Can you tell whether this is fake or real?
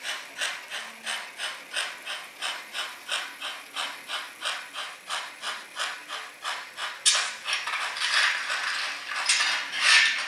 real